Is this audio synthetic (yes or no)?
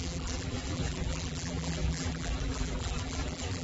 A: yes